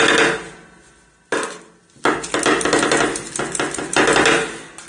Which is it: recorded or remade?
recorded